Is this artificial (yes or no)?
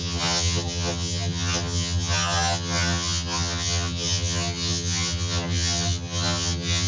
yes